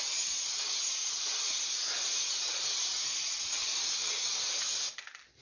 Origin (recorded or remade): recorded